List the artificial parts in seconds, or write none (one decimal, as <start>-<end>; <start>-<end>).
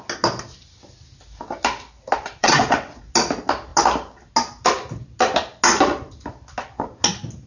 2.4-3.0